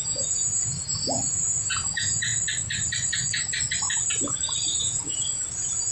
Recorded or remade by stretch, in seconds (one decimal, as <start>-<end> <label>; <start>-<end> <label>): 0.0-2.3 remade; 2.3-4.8 recorded; 4.8-5.9 remade

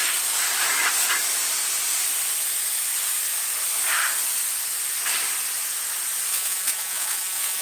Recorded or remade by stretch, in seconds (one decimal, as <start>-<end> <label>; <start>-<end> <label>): 0.0-6.3 recorded; 6.3-7.6 remade

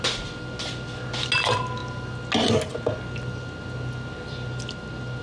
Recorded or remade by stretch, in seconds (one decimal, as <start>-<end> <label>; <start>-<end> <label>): 0.0-5.2 recorded

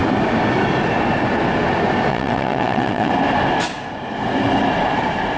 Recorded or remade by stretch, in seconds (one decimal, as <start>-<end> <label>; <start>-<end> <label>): 0.0-2.1 recorded; 2.1-3.1 remade; 3.1-5.4 recorded

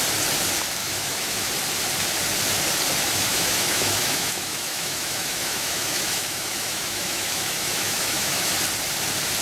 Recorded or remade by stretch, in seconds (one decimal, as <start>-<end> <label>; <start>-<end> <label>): 0.0-0.8 recorded; 0.8-1.5 remade; 1.5-3.3 recorded; 3.3-8.5 remade; 8.5-9.4 recorded